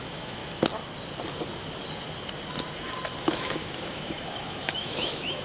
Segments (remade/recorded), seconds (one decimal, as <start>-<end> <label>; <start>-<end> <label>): 0.0-0.4 remade; 0.4-3.2 recorded; 3.2-5.4 remade